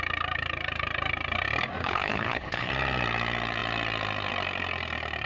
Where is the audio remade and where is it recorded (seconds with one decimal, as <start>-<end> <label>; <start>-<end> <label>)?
0.0-1.8 recorded; 1.8-2.7 remade; 2.7-5.3 recorded